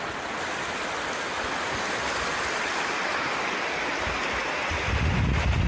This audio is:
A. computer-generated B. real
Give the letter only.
B